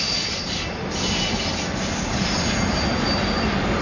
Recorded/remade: recorded